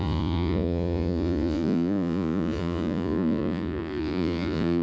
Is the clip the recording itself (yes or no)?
no